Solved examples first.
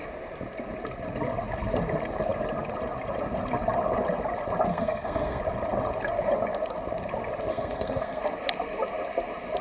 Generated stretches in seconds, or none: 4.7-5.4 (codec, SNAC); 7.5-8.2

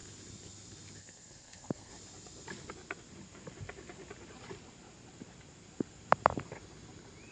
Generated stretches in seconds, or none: 1.0-1.9 (codec, SNAC)

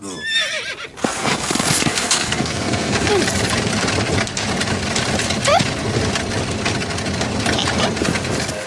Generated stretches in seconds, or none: 1.0-3.1 (codec, SNAC)

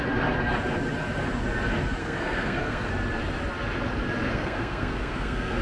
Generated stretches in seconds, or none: 2.0-2.9 (codec, SNAC); 4.3-5.6

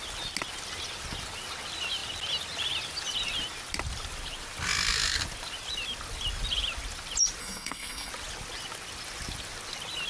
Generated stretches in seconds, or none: 7.4-8.1 (codec, SNAC)

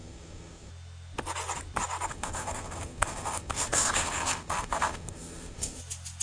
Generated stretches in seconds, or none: 0.0-0.7 (codec, SNAC); 2.1-5.8

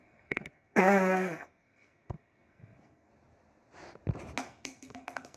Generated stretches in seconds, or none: 0.0-3.1 (codec, SNAC); 4.4-5.4